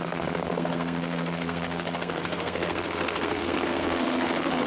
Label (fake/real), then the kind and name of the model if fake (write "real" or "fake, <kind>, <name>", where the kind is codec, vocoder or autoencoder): fake, codec, SNAC